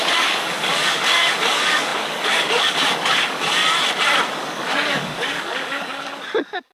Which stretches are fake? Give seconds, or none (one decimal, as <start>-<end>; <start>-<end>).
0.0-3.6; 4.3-6.7